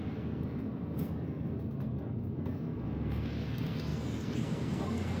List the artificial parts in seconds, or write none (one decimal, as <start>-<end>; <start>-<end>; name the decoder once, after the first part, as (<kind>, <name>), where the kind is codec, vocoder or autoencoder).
0.0-5.2 (codec, SNAC)